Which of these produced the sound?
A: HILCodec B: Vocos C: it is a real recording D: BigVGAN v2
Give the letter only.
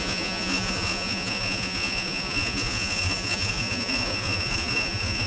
B